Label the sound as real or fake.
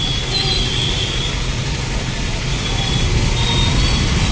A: real